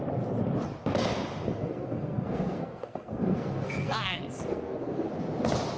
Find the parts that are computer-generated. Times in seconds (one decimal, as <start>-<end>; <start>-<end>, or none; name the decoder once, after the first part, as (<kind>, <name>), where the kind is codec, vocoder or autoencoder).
1.6-5.1 (codec, SNAC)